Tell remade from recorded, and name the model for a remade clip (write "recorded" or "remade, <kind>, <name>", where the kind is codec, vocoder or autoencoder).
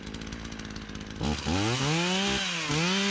recorded